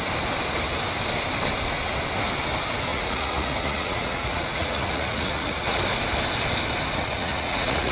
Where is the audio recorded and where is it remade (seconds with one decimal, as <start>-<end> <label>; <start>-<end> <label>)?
0.0-2.9 recorded; 2.9-5.8 remade; 5.8-7.0 recorded; 7.0-7.9 remade